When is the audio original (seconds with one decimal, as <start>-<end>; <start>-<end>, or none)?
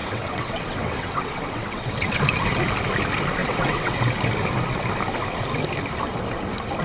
2.2-3.4; 4.0-6.8